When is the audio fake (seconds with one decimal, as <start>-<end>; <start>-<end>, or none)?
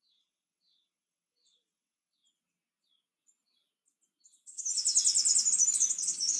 0.0-2.2; 6.0-6.4